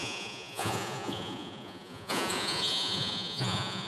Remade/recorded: remade